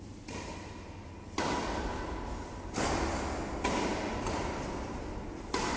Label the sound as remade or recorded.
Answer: recorded